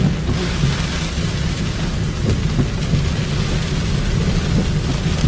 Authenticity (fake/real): real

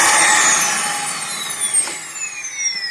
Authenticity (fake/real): real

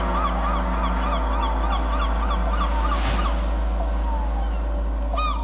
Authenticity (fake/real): real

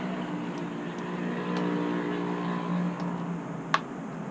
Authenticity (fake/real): real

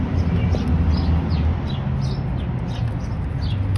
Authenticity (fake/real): real